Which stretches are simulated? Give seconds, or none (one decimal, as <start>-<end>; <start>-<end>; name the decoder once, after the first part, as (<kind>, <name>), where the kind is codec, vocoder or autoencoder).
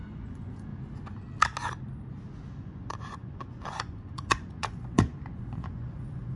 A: 0.0-0.7 (vocoder, Vocos); 2.5-6.4